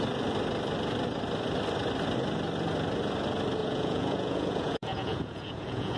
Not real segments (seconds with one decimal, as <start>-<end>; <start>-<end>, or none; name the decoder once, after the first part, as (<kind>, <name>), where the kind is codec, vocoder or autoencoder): 3.6-6.0 (vocoder, Vocos)